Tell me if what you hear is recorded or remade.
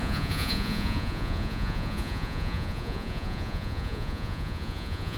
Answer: remade